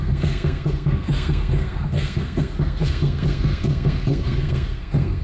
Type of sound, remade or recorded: remade